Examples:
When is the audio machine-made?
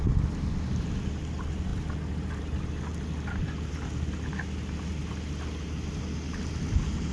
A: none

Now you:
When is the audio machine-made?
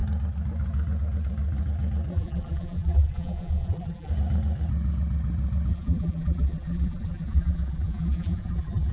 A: 2.1-4.1 (vocoder, BigVGAN v2); 5.7-8.9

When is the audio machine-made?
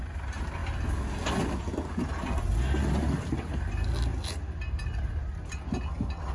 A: none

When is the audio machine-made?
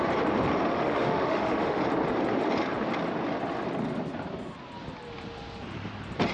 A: 0.7-1.8 (autoencoder, DAC-VAE)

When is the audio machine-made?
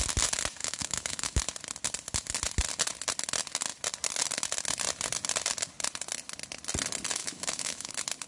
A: 0.6-1.4 (autoencoder, DAC-VAE); 7.2-7.9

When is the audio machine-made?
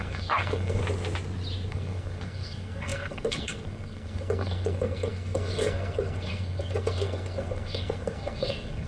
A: 0.0-0.8 (codec, SNAC); 1.7-8.9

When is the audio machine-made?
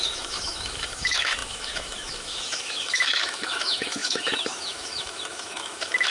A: 0.0-6.1 (autoencoder, DAC-VAE)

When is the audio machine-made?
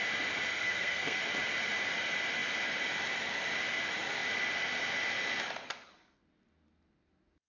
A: 0.5-1.2 (codec, SNAC)